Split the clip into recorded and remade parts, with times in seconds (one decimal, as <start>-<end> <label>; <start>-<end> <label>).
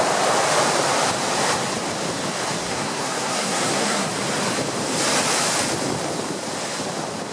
0.0-2.6 recorded; 2.6-4.1 remade; 4.1-7.3 recorded